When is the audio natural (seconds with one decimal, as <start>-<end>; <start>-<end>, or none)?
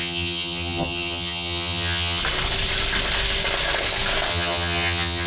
2.2-4.3